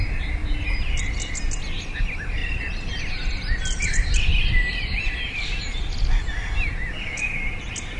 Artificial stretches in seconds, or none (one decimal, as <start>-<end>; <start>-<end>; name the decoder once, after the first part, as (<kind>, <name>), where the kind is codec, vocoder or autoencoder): 0.4-1.4 (vocoder, BigVGAN v2); 2.4-3.1; 4.7-5.5